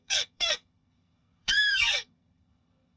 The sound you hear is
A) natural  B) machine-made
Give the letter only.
B